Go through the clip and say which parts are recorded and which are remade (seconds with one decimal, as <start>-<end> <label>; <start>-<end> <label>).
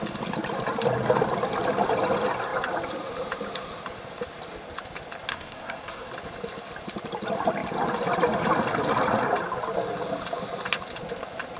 0.0-5.3 recorded; 5.3-6.1 remade; 6.1-11.6 recorded